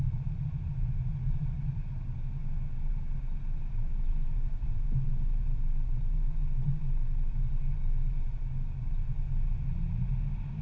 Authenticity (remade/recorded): remade